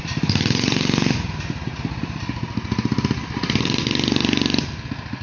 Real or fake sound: fake